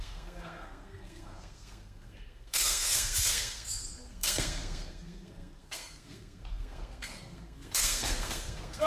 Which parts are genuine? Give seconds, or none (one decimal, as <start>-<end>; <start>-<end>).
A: none